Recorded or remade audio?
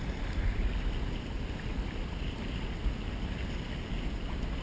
recorded